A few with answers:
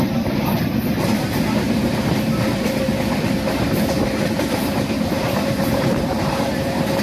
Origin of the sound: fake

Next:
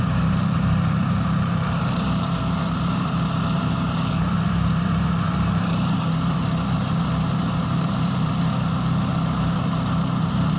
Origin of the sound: fake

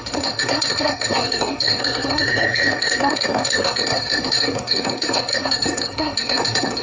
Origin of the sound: fake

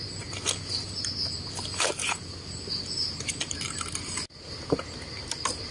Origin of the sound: real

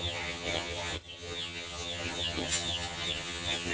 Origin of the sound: fake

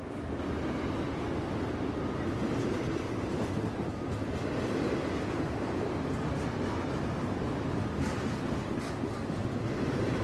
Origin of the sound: real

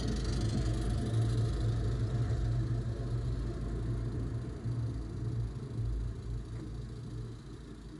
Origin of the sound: real